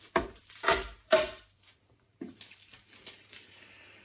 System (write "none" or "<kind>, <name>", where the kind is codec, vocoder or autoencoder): vocoder, BigVGAN v2